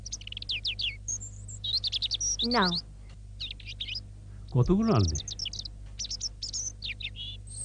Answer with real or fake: real